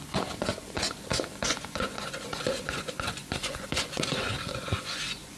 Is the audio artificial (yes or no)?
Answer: yes